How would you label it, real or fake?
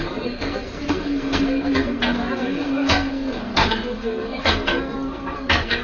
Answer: fake